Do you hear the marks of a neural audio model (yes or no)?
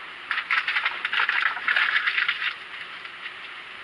yes